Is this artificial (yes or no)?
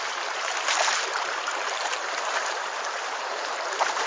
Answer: yes